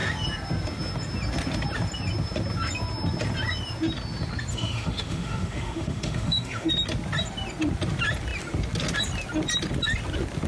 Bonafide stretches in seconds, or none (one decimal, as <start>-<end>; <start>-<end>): 0.0-4.5; 6.7-10.5